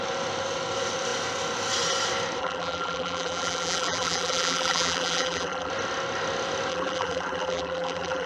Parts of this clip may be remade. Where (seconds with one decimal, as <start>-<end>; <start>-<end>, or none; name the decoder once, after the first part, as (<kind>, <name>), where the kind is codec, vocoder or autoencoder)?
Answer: 2.4-5.7 (vocoder, BigVGAN v2); 6.7-8.3

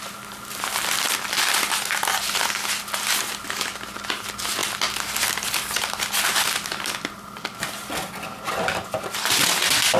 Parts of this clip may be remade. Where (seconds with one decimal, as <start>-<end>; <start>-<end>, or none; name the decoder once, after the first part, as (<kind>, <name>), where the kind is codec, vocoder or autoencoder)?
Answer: none

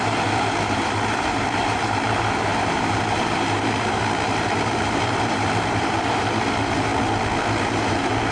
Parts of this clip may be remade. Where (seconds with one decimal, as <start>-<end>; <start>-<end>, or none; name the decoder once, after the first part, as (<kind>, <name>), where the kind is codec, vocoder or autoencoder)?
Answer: 0.0-6.9 (vocoder, BigVGAN v2); 7.6-8.3

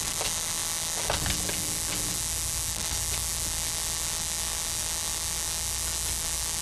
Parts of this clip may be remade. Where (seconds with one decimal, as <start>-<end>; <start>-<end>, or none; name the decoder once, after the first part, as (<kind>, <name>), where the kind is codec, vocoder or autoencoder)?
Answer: none